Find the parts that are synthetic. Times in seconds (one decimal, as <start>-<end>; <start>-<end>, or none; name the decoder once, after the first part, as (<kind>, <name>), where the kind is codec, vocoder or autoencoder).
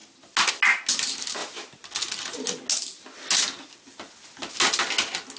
none